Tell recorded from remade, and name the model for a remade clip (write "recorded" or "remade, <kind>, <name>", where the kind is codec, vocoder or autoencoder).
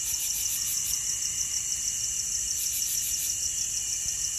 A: recorded